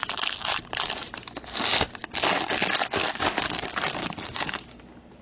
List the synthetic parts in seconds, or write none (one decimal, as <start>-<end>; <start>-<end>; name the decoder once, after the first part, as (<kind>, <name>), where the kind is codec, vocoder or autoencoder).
4.0-4.8 (codec, DAC)